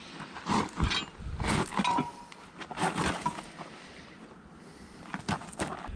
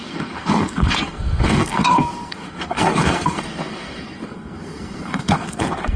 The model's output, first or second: second